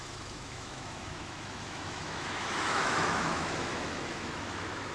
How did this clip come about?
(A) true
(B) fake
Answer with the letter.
B